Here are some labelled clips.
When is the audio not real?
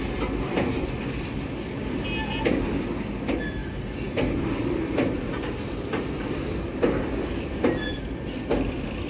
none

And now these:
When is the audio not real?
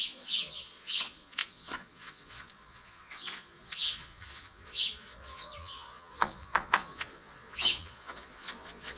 0.0-9.0 (vocoder, Vocos)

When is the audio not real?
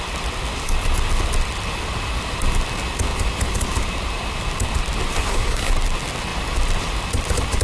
5.1-5.7 (codec, SNAC)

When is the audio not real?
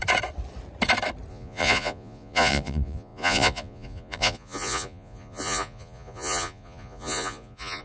1.3-7.8 (vocoder, Vocos)